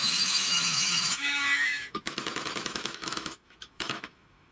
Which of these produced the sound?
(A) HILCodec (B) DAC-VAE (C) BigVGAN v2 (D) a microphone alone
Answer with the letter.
B